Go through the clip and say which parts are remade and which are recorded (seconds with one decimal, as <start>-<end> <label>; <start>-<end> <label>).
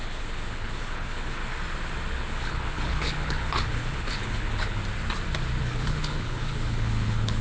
0.0-1.4 remade; 1.4-2.1 recorded; 2.1-4.8 remade; 4.8-5.6 recorded; 5.6-7.4 remade